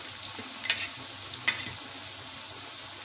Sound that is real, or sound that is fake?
real